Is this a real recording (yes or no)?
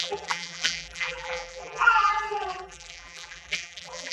no